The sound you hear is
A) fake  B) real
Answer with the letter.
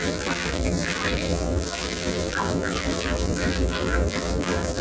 A